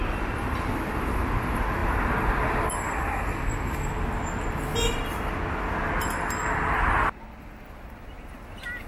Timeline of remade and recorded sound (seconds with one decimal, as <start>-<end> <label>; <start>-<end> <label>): 0.0-0.9 remade; 0.9-1.8 recorded; 1.8-3.0 remade; 3.0-8.9 recorded